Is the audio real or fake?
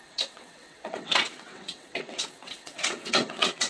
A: fake